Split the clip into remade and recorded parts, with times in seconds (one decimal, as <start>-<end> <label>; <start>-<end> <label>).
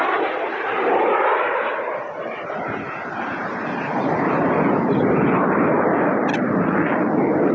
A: 0.0-1.7 remade; 1.7-4.8 recorded; 4.8-7.5 remade